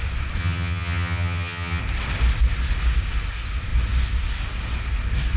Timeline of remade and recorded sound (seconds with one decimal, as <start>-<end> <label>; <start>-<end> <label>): 0.0-0.4 recorded; 0.4-1.8 remade; 1.8-5.4 recorded